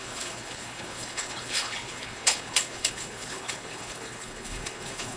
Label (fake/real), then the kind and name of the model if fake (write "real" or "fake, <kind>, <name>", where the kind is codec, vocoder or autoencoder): fake, codec, HILCodec